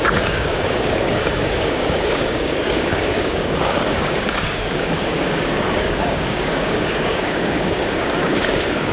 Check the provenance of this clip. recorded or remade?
remade